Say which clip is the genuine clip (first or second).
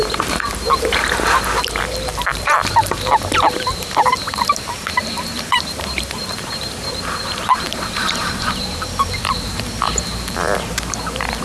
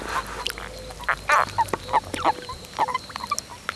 second